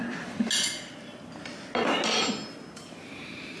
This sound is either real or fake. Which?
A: real